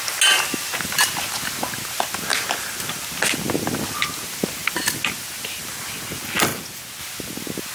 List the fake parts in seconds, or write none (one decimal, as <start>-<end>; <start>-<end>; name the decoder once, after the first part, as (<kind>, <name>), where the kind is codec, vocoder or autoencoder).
none